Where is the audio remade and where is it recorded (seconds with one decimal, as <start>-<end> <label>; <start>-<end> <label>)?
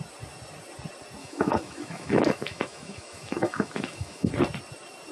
0.0-1.2 recorded; 1.2-4.3 remade; 4.3-5.1 recorded